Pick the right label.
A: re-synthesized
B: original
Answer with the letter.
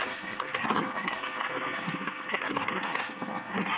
A